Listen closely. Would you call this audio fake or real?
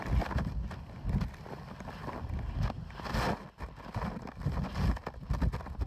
real